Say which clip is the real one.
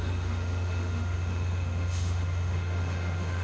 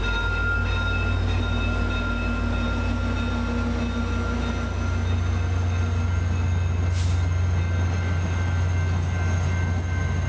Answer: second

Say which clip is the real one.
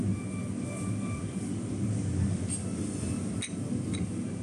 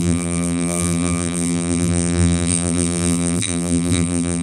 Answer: first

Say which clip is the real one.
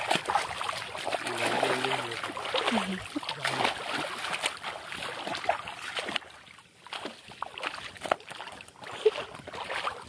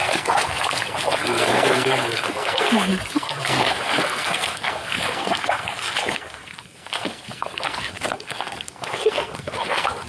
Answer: first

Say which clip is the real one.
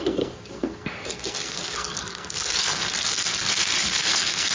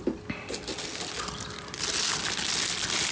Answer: second